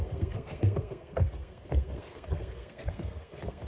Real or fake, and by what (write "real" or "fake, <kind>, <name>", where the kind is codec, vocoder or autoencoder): fake, codec, SNAC